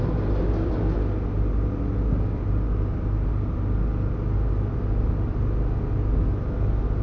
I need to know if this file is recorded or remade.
recorded